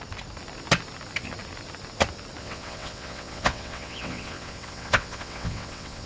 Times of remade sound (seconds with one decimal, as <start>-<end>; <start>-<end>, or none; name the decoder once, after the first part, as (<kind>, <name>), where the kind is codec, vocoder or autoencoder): 2.4-6.1 (vocoder, WaveNeXt)